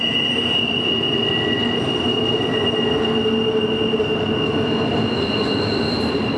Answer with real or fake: real